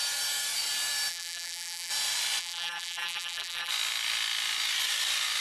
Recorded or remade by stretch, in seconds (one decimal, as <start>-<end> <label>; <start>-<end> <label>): 0.0-1.1 recorded; 1.1-1.9 remade; 1.9-2.4 recorded; 2.4-3.7 remade; 3.7-5.4 recorded